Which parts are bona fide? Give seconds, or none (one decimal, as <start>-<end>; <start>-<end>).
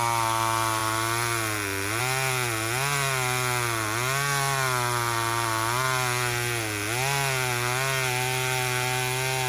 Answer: 0.0-9.5